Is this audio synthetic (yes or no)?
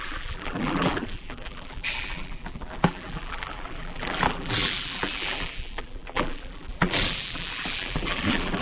yes